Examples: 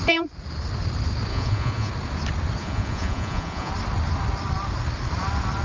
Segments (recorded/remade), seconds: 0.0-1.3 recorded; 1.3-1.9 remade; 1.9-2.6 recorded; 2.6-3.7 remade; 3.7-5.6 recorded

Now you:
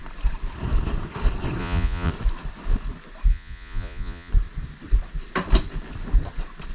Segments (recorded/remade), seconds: 0.0-1.6 recorded; 1.6-2.1 remade; 2.1-3.3 recorded; 3.3-4.3 remade; 4.3-6.7 recorded

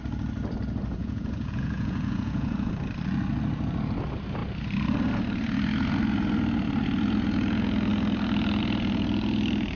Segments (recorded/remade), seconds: 0.0-1.0 recorded; 1.0-2.7 remade; 2.7-9.8 recorded